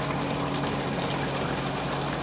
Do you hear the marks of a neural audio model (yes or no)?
no